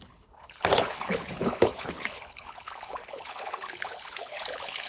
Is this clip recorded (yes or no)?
no